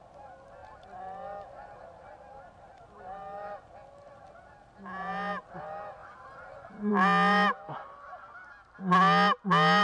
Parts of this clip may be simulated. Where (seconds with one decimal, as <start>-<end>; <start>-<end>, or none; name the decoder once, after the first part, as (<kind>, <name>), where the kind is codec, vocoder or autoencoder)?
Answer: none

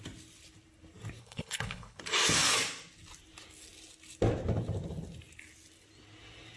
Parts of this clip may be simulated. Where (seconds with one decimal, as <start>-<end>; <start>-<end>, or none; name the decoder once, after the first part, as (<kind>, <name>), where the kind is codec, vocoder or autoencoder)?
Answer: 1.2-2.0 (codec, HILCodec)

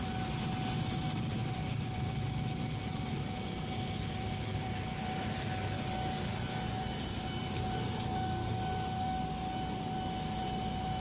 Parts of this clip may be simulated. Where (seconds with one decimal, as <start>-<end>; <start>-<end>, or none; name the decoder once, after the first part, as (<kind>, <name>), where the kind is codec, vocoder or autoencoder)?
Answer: 1.4-5.5 (vocoder, BigVGAN v2)

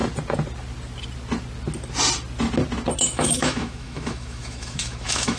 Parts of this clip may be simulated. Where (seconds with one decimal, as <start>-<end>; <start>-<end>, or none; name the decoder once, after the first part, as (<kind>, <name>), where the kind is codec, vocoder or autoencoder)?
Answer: 3.0-5.4 (autoencoder, DAC-VAE)

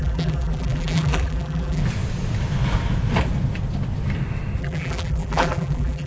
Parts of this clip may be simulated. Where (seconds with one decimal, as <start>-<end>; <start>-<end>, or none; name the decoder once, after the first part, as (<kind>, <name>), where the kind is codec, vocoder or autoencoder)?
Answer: 0.0-1.8 (vocoder, BigVGAN v2); 4.6-6.1

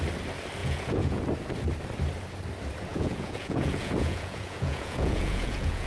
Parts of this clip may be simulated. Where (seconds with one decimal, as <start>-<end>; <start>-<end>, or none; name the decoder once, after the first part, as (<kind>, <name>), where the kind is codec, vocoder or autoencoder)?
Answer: 0.6-1.2 (vocoder, Vocos); 2.9-5.9